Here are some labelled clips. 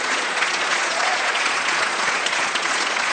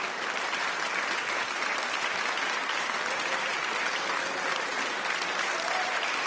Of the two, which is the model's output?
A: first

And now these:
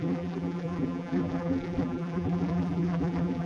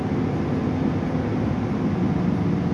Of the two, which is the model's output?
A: first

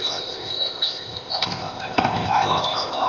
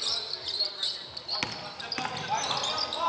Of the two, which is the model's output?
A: first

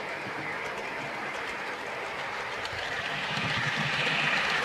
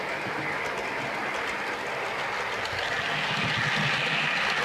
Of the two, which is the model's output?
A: first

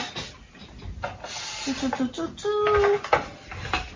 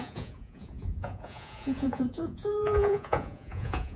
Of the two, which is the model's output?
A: second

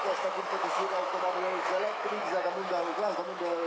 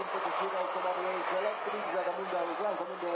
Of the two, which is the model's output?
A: first